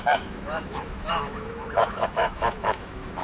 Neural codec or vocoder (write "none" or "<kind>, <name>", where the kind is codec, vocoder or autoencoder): autoencoder, DAC-VAE